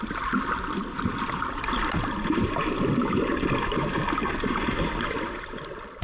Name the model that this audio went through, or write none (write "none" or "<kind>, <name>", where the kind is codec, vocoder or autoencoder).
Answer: none